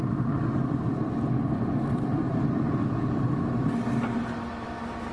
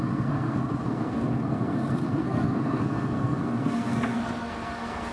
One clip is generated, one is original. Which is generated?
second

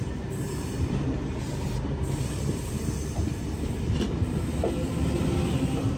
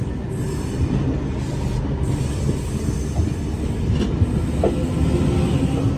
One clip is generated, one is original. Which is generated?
first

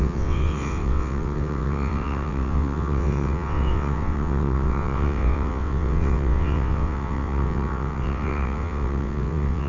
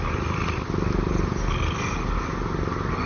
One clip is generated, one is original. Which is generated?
first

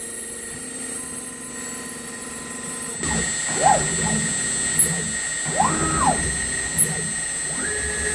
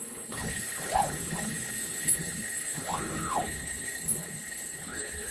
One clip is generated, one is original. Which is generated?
second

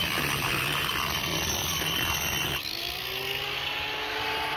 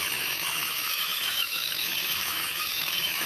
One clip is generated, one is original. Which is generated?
second